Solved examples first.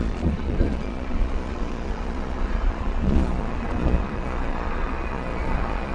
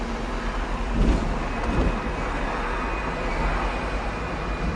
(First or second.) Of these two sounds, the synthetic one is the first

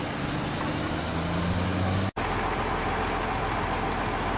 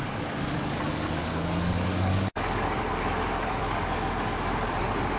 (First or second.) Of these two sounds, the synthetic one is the second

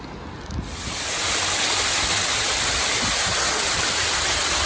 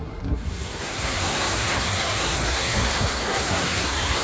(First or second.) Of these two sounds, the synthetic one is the second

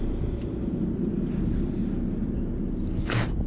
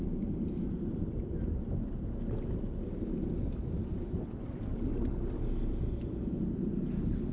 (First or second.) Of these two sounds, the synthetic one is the second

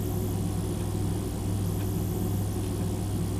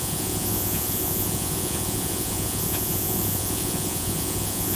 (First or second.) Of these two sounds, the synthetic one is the second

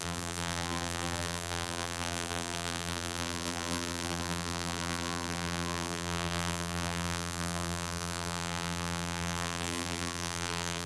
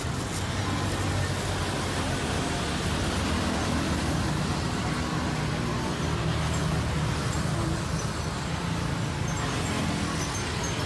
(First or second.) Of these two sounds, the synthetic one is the first